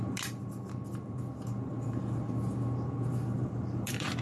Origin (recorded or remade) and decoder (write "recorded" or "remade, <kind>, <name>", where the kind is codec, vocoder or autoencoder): remade, vocoder, BigVGAN v2